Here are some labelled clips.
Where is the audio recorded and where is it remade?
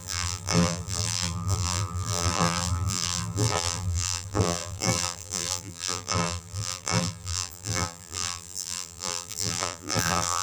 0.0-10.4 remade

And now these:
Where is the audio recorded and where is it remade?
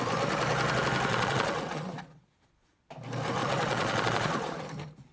0.0-1.1 recorded; 1.1-2.9 remade; 2.9-3.4 recorded; 3.4-4.6 remade; 4.6-5.1 recorded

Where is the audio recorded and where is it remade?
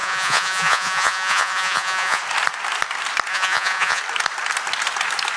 0.0-2.2 remade; 2.2-3.3 recorded; 3.3-4.0 remade; 4.0-5.4 recorded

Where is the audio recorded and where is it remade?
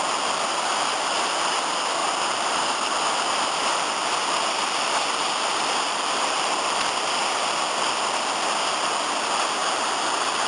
0.0-2.0 recorded; 2.0-6.8 remade; 6.8-10.5 recorded